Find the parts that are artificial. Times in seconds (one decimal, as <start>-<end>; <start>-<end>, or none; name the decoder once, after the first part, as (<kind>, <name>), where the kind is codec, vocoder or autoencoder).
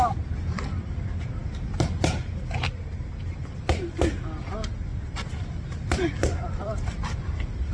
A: 0.0-1.4 (vocoder, BigVGAN v2); 4.5-6.7